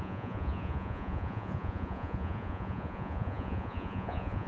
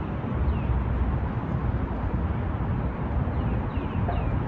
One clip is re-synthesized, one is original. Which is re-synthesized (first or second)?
first